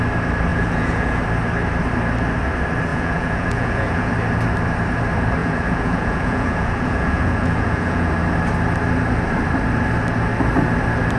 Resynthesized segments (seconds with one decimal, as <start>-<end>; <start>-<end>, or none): 0.5-1.2; 2.9-4.1; 5.4-8.1